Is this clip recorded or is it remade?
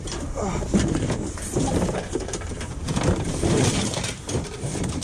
remade